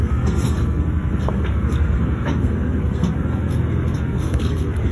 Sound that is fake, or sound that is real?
fake